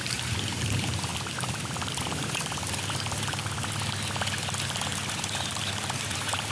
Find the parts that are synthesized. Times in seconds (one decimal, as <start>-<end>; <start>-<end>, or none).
0.0-1.1; 2.0-3.4; 5.2-6.5